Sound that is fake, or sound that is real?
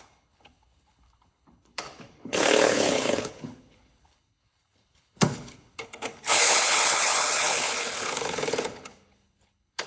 fake